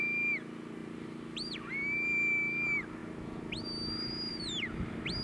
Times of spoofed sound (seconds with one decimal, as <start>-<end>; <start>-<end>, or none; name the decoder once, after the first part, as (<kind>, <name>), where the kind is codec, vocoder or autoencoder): 0.8-1.7 (vocoder, BigVGAN v2)